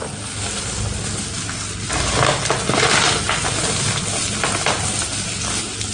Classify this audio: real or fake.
real